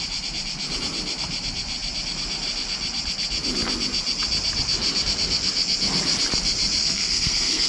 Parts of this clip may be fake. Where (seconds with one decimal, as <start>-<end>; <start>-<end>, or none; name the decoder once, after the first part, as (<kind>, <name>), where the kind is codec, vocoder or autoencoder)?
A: 6.8-7.7 (codec, SNAC)